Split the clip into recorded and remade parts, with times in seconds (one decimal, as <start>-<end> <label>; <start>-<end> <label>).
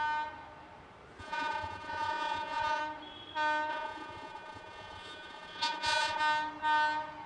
0.0-1.2 recorded; 1.2-2.8 remade; 2.8-3.7 recorded; 3.7-6.2 remade; 6.2-7.3 recorded